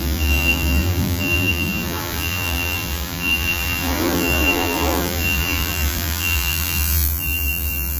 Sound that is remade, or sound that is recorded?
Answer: remade